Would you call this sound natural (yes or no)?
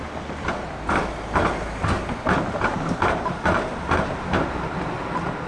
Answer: yes